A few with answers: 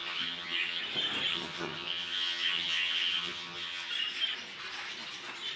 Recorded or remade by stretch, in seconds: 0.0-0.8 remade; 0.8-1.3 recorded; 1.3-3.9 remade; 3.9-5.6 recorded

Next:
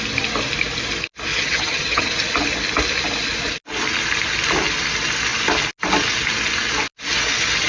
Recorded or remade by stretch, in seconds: 0.0-1.3 recorded; 1.3-2.1 remade; 2.1-7.7 recorded

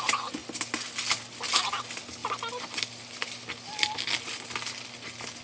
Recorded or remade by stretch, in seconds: 0.0-5.4 recorded

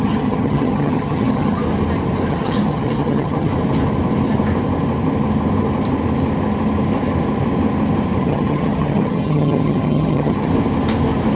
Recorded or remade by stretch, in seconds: 0.0-1.6 remade; 1.6-2.3 recorded; 2.3-3.5 remade; 3.5-8.2 recorded; 8.2-10.5 remade; 10.5-11.4 recorded